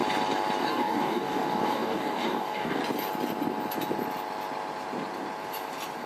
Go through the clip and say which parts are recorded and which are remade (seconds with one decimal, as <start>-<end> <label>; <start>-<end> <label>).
0.0-0.6 recorded; 0.6-2.8 remade; 2.8-6.1 recorded